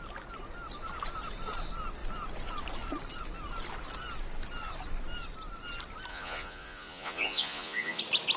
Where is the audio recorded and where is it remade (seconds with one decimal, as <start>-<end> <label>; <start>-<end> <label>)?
0.0-6.1 recorded; 6.1-8.0 remade; 8.0-8.4 recorded